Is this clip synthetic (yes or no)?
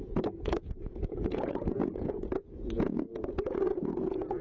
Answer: yes